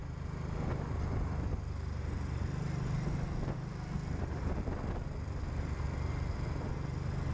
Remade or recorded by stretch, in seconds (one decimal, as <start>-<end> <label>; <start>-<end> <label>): 0.0-7.3 recorded